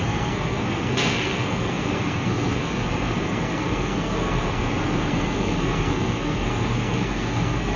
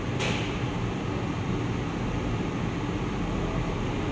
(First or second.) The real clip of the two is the second